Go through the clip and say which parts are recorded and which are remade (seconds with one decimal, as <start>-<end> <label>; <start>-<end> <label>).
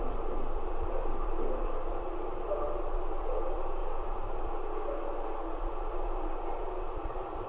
0.0-7.5 remade